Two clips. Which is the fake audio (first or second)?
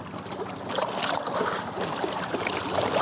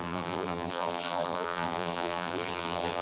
second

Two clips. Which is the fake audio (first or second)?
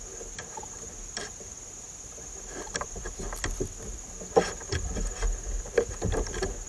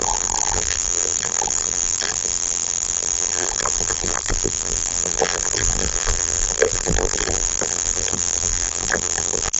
second